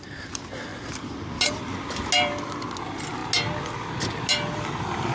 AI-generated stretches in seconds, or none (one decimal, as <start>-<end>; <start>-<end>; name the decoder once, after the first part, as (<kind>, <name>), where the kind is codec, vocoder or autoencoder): none